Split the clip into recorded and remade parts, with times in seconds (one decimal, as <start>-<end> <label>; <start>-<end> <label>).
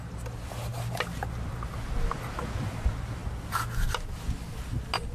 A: 0.0-5.1 recorded